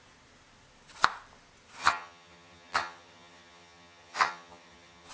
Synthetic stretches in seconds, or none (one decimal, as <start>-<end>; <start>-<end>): 1.8-5.1